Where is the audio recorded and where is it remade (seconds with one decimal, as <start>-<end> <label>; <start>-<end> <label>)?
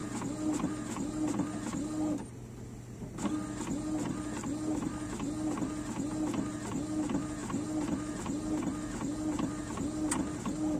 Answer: 0.0-10.8 recorded